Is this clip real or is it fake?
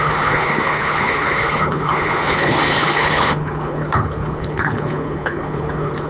fake